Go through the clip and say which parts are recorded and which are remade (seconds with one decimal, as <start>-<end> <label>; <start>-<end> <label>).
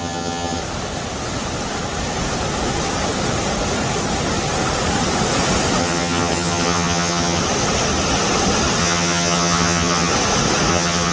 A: 0.0-0.6 remade; 0.6-5.8 recorded; 5.8-7.4 remade; 7.4-8.8 recorded; 8.8-10.1 remade; 10.1-10.7 recorded; 10.7-11.1 remade